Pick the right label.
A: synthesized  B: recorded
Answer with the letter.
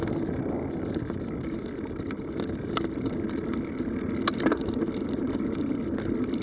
B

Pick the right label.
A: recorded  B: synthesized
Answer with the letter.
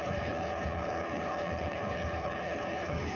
B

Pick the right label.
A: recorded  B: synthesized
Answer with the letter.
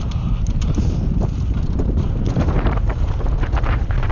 B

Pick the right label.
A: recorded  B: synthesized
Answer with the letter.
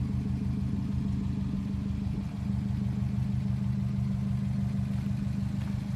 A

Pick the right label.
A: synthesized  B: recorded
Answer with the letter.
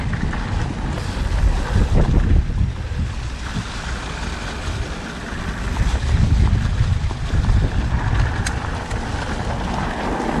B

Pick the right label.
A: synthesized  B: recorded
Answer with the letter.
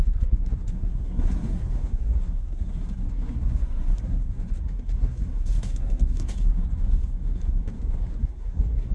A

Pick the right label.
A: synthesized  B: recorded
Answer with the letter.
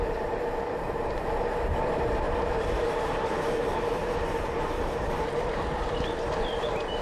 A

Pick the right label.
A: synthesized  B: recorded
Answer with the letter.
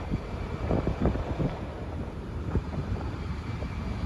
A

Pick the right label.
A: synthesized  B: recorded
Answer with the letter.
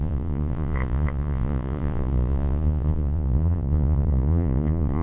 A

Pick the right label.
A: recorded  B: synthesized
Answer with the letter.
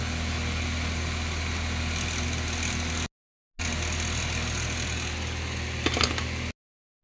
A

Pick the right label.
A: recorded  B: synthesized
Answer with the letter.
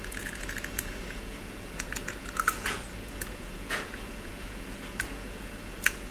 B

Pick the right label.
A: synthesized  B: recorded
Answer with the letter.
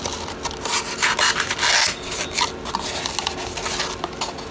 B